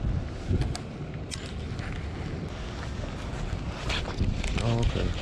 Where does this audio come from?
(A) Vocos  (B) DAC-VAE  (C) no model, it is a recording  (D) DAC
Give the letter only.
C